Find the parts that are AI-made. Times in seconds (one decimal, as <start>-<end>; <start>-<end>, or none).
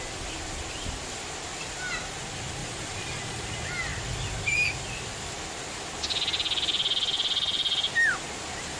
2.6-3.5